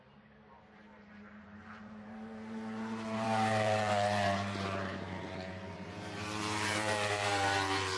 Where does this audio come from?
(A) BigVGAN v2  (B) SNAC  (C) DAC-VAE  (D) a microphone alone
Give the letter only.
A